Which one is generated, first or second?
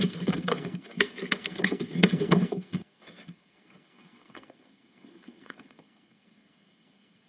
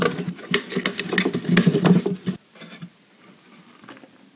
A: first